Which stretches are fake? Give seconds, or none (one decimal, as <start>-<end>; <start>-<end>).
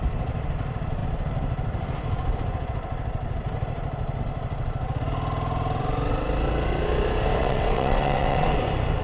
7.4-8.6